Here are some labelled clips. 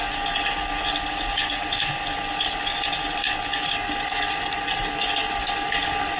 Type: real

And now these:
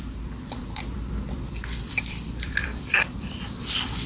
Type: fake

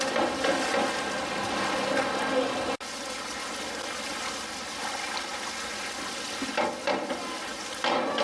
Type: real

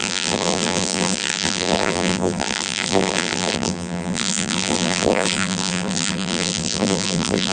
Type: fake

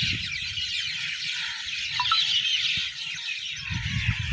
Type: real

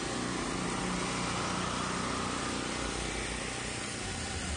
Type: real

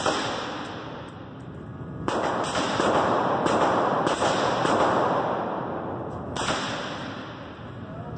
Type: real